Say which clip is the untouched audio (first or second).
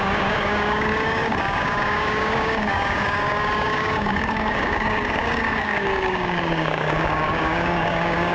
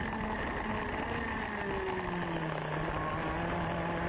second